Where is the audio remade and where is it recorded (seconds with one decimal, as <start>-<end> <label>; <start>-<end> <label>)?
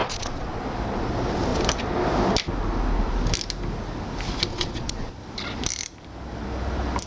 0.0-0.6 remade; 0.6-4.5 recorded; 4.5-5.1 remade; 5.1-7.1 recorded